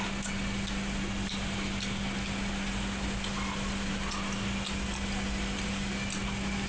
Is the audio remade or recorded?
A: recorded